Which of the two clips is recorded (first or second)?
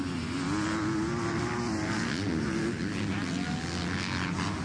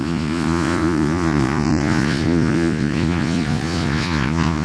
first